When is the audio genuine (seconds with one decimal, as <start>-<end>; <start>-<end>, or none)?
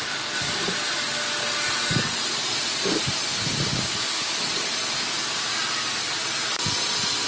0.0-3.7; 4.3-7.3